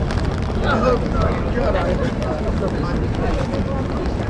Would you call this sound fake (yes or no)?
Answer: no